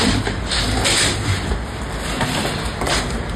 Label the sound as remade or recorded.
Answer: recorded